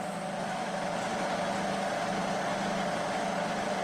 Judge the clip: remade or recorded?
recorded